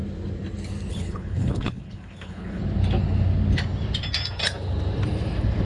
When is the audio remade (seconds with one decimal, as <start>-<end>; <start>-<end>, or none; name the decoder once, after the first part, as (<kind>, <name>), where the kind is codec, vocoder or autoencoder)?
0.9-2.6 (codec, HILCodec)